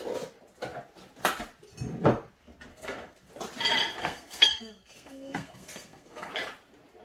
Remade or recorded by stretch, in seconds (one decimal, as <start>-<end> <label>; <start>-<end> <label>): 0.0-2.7 recorded; 2.7-3.3 remade; 3.3-4.0 recorded; 4.0-6.3 remade; 6.3-7.0 recorded